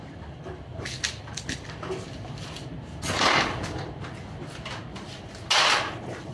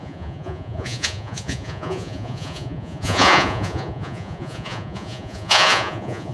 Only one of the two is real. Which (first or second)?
first